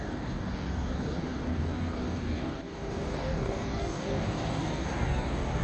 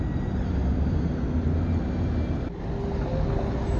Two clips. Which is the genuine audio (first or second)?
second